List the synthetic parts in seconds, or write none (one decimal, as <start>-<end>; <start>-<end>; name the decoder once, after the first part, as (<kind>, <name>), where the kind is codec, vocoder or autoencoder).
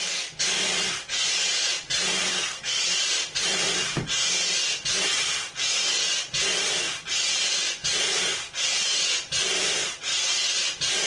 2.3-2.8 (codec, SNAC)